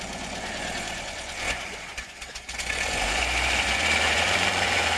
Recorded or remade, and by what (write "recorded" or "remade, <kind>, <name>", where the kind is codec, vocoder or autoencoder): remade, vocoder, Vocos